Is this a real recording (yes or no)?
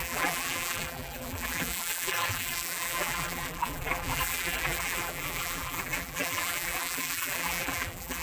no